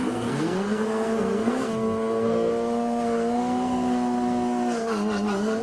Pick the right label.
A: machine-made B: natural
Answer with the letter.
A